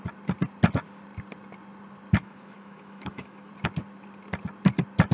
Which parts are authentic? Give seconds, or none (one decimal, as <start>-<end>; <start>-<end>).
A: 0.0-2.2; 3.5-5.1